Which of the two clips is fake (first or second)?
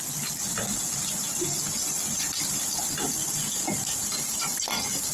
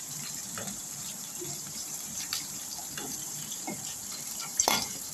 second